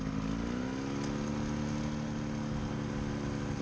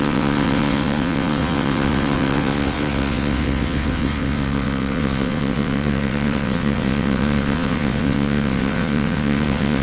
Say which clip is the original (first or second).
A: first